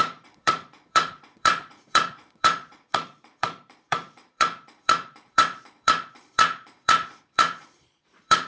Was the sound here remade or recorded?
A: remade